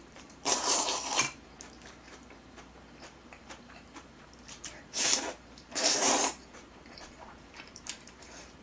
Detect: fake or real fake